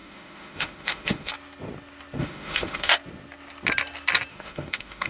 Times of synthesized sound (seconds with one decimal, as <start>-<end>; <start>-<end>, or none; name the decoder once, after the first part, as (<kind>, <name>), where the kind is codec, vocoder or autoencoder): 0.0-1.3 (autoencoder, DAC-VAE); 2.2-2.9; 4.3-5.1